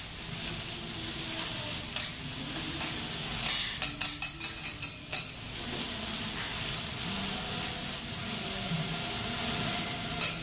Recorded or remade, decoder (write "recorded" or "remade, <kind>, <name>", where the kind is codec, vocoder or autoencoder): recorded